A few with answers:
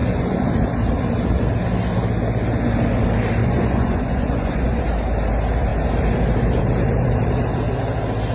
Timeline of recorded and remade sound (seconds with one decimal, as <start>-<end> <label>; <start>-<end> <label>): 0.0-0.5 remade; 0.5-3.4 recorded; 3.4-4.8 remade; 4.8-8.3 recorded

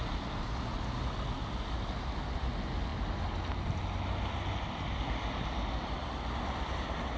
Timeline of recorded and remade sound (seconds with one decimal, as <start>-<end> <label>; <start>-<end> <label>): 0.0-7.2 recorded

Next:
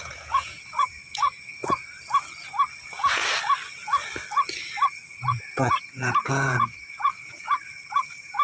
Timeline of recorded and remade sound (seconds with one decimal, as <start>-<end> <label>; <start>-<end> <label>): 0.0-1.6 remade; 1.6-2.8 recorded; 2.8-3.2 remade; 3.2-5.3 recorded; 5.3-8.4 remade